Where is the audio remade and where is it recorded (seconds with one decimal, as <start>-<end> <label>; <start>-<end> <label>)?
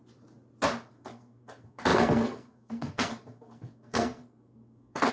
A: 0.0-0.9 recorded; 0.9-5.1 remade